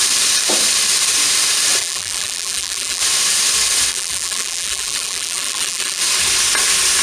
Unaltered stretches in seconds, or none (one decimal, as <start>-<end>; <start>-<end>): 0.0-1.8; 3.0-3.9; 6.0-7.0